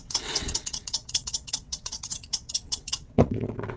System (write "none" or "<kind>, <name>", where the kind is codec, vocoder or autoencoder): vocoder, WaveNeXt